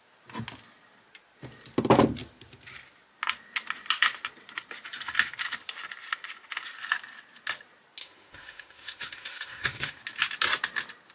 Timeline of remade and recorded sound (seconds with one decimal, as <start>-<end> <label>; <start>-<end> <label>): 0.0-8.0 recorded; 8.0-10.0 remade; 10.0-11.1 recorded